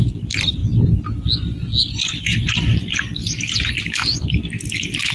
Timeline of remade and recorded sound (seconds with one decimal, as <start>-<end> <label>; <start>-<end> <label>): 0.0-0.6 remade; 0.6-3.7 recorded; 3.7-5.1 remade